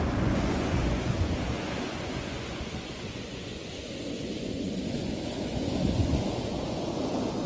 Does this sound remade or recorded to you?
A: remade